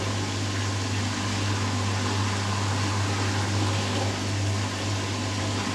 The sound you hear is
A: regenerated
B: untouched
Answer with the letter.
B